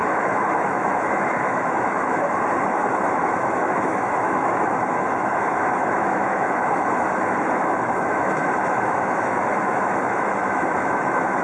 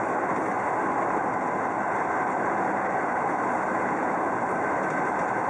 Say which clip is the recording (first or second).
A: second